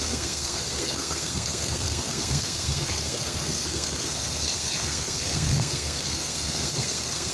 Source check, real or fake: fake